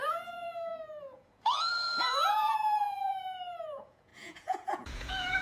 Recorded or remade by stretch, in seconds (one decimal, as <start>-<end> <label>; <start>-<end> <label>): 0.0-5.4 remade